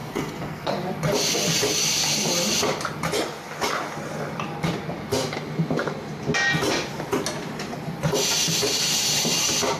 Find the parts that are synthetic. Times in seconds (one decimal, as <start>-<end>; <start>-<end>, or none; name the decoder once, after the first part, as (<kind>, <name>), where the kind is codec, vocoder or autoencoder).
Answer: 0.0-0.7 (codec, SNAC)